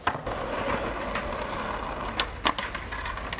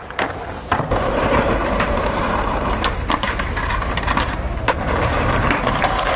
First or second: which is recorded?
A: first